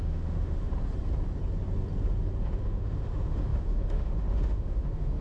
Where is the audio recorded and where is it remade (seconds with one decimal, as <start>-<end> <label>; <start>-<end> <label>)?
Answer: 0.0-0.7 remade; 0.7-2.4 recorded; 2.4-5.2 remade